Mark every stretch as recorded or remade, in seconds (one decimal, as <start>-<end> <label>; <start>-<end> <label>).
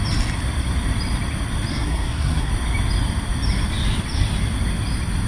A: 0.0-1.7 recorded; 1.7-2.5 remade; 2.5-5.3 recorded